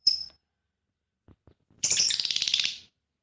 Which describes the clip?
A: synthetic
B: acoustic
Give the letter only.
A